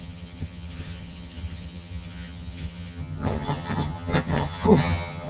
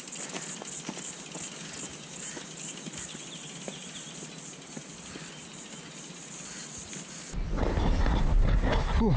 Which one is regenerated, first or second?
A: first